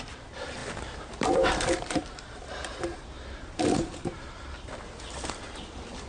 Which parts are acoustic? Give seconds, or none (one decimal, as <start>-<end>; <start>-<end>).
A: none